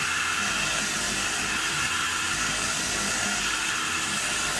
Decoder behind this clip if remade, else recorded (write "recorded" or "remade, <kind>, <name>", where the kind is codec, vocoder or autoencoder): recorded